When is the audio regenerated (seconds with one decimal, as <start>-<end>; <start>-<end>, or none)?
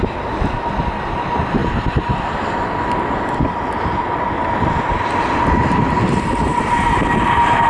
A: none